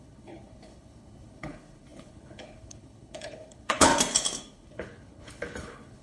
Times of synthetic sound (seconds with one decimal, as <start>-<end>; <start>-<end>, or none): 0.0-3.9; 4.4-6.0